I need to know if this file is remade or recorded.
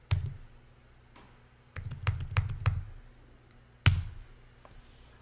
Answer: recorded